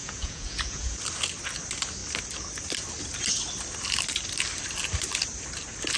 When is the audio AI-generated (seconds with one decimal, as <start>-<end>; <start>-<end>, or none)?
0.0-1.0